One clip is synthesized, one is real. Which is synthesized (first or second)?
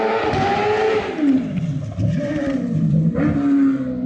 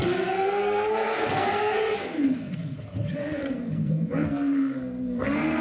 second